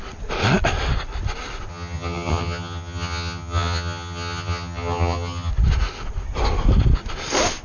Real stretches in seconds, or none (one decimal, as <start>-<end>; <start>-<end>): 0.0-1.7; 5.5-7.6